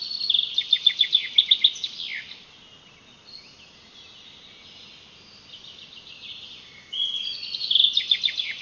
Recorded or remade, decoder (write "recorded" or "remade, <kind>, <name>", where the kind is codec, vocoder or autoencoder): recorded